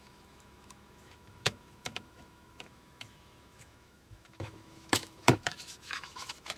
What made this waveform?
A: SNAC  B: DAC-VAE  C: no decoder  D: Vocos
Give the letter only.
B